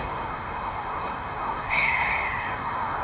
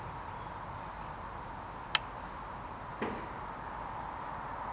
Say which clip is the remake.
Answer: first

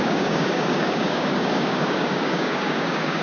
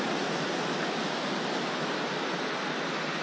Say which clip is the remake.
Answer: first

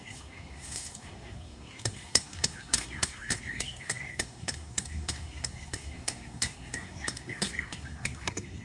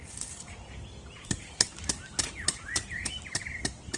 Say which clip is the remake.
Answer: first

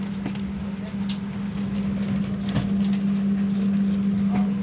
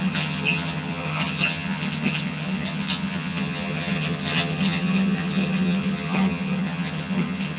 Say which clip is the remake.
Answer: second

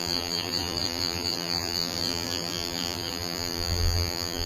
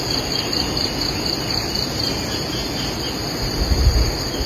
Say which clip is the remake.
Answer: first